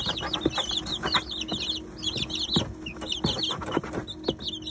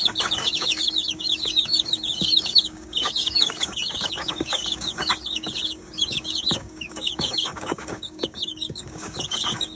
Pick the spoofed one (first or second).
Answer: second